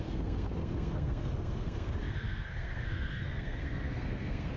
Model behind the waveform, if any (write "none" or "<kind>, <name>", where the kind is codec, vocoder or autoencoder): codec, SNAC